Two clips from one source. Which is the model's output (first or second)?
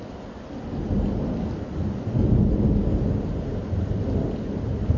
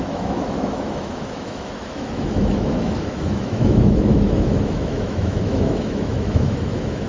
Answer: second